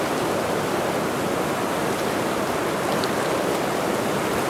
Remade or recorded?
recorded